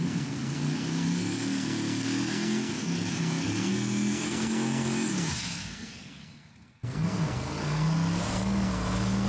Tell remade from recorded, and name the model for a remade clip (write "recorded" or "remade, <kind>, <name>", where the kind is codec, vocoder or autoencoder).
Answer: remade, codec, SNAC